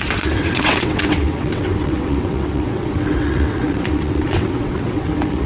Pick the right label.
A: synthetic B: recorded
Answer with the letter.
A